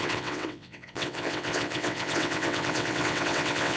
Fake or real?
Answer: fake